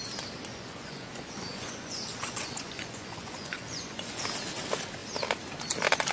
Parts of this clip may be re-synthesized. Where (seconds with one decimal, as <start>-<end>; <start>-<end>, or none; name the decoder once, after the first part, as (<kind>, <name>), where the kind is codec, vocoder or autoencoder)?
0.5-4.2 (vocoder, Vocos)